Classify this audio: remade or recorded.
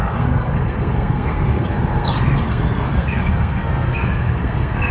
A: remade